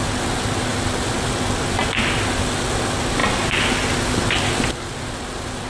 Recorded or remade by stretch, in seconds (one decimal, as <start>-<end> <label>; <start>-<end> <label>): 0.0-5.7 recorded